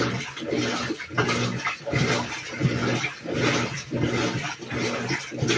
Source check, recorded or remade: recorded